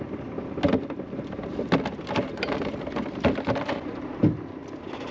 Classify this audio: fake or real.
real